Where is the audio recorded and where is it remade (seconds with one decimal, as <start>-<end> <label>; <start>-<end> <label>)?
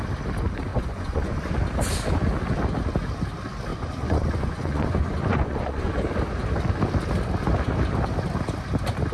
0.0-0.7 recorded; 0.7-1.5 remade; 1.5-3.7 recorded; 3.7-5.9 remade; 5.9-9.1 recorded